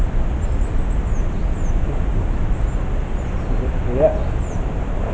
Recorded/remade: recorded